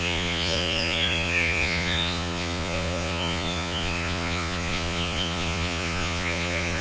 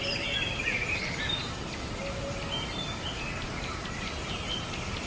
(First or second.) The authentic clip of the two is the second